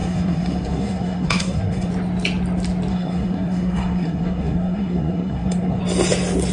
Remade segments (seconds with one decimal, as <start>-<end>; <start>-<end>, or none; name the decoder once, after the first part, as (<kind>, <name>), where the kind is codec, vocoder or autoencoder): 0.0-1.9 (codec, SNAC); 2.9-5.8